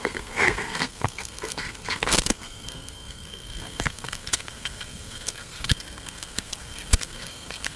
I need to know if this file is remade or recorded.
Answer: remade